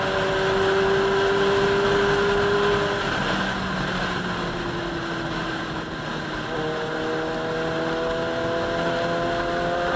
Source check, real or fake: real